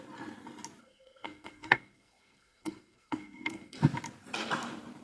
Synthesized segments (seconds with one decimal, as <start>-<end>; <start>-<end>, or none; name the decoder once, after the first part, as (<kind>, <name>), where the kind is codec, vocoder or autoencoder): 0.8-3.8 (codec, SNAC)